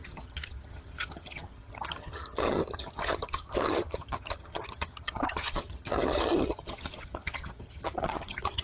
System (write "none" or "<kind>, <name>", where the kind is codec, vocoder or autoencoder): vocoder, HiFi-GAN